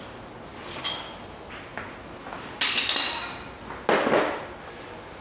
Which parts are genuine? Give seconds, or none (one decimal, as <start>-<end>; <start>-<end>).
0.0-5.2